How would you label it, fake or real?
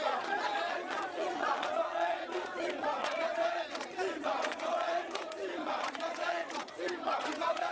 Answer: fake